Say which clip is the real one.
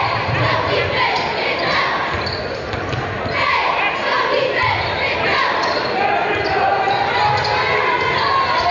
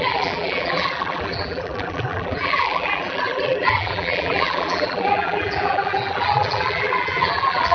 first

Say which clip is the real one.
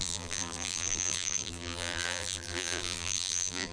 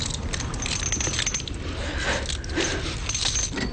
second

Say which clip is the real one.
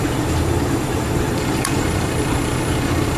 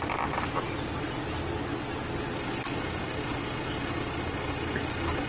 second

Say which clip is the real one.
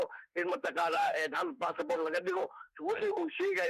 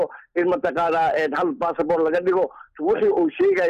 second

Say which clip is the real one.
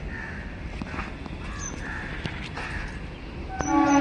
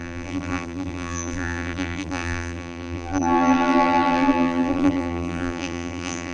first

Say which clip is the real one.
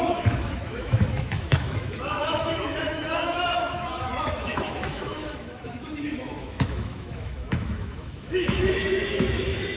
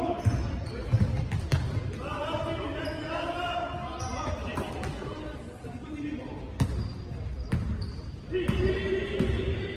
second